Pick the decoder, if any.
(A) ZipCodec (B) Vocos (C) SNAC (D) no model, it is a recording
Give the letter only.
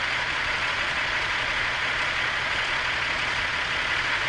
B